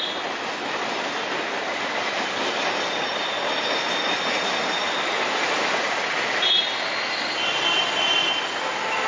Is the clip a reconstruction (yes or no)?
no